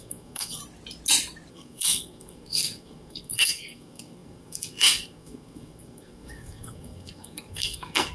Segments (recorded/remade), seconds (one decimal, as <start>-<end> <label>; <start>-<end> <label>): 0.0-0.6 remade; 0.6-1.5 recorded; 1.5-8.1 remade